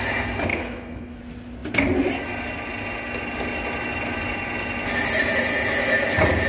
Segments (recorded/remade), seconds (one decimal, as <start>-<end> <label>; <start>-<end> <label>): 0.0-0.5 recorded; 0.5-1.2 remade; 1.2-6.5 recorded